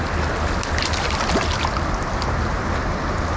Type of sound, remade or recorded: recorded